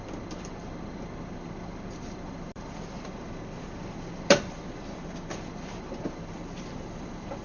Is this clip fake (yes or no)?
no